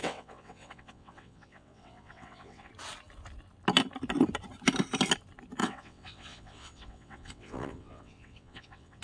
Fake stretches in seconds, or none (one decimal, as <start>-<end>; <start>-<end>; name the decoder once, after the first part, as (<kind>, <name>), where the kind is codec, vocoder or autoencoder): 0.0-2.7 (vocoder, WaveNeXt); 5.6-9.0